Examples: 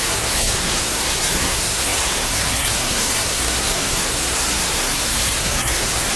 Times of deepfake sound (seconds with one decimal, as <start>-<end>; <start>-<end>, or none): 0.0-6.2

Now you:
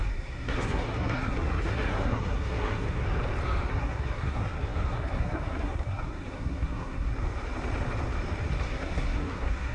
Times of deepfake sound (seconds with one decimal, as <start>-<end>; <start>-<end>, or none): 0.0-3.0; 3.7-7.1; 8.6-9.7

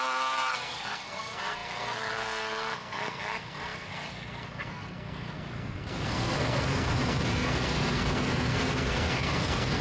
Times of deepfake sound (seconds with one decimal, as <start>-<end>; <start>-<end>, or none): 0.0-9.8

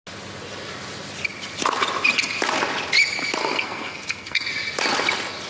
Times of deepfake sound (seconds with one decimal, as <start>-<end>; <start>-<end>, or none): 3.4-4.5

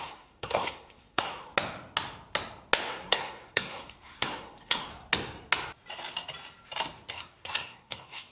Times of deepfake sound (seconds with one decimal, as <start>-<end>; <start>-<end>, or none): 0.0-1.5; 2.9-4.9; 7.1-8.3